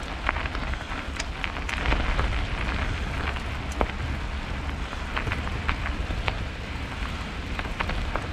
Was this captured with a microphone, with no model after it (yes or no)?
yes